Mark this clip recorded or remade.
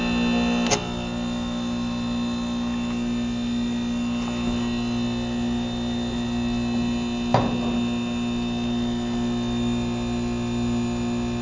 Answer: recorded